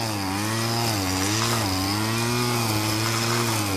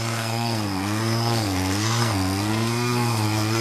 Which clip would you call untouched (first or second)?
first